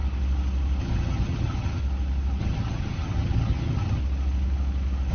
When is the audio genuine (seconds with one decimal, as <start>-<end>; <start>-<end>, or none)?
0.0-0.8; 1.8-2.4; 4.0-5.1